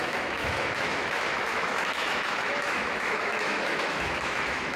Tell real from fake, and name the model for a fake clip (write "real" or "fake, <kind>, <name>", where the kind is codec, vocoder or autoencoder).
fake, autoencoder, DAC-VAE